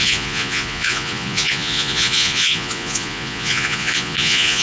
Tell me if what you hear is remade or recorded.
remade